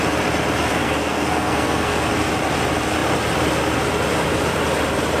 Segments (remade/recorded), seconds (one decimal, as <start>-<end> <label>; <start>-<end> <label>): 0.0-0.7 recorded; 0.7-2.1 remade; 2.1-5.2 recorded